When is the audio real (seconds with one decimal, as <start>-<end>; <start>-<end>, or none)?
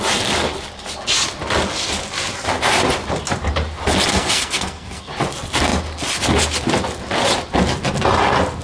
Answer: 0.0-4.1; 5.1-8.6